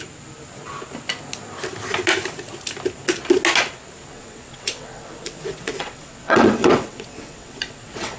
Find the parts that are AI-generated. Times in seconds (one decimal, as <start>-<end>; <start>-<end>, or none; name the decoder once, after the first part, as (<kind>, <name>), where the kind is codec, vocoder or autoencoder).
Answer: 4.1-8.2 (vocoder, WaveNeXt)